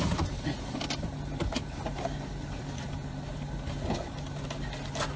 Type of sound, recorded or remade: recorded